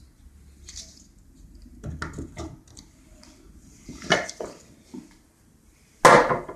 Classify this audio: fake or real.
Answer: real